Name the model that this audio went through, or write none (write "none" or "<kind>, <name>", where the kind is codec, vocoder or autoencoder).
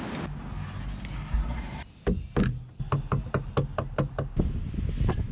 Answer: none